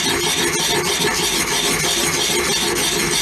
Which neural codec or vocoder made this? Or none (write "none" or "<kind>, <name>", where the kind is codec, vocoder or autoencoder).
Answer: none